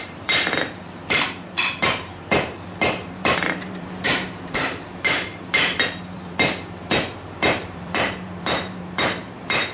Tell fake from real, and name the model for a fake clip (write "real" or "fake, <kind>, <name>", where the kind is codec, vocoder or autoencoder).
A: fake, vocoder, BigVGAN v2